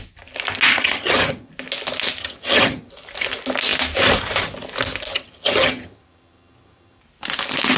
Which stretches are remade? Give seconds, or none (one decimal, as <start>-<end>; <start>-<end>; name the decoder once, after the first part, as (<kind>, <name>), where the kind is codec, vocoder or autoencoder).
0.7-1.5 (vocoder, HiFi-GAN); 2.2-2.9; 5.1-7.0